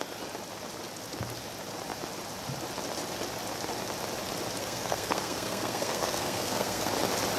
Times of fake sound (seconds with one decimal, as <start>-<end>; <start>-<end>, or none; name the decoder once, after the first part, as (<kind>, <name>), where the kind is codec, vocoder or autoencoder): 4.6-6.9 (codec, SNAC)